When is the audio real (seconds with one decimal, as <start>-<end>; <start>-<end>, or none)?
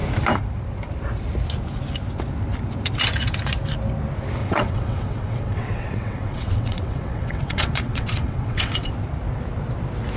0.0-4.4; 8.9-10.2